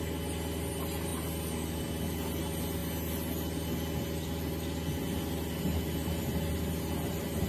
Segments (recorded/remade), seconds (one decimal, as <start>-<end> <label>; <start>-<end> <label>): 0.0-7.5 recorded